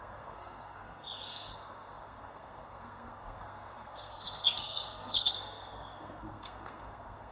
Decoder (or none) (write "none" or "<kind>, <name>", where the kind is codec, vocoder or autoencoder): codec, SNAC